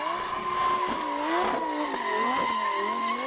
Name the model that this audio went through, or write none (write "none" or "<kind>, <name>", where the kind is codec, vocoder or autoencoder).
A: none